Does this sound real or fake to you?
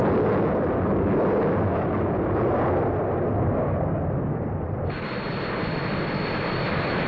real